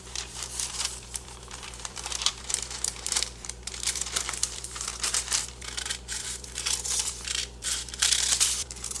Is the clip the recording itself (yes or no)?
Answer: no